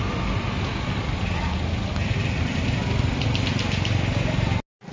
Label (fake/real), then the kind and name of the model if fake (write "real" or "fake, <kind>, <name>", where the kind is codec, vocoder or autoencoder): real